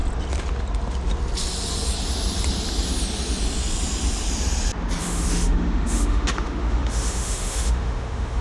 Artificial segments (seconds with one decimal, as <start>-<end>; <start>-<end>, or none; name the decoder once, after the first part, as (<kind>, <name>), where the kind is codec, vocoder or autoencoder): 5.0-8.4 (autoencoder, DAC-VAE)